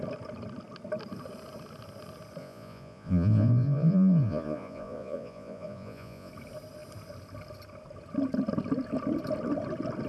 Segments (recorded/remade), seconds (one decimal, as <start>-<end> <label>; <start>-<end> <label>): 0.0-2.4 recorded; 2.4-6.3 remade; 6.3-10.1 recorded